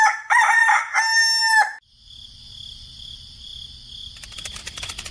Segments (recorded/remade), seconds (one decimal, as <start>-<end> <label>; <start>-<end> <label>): 0.0-0.6 remade; 0.6-2.1 recorded; 2.1-3.5 remade; 3.5-4.6 recorded; 4.6-5.1 remade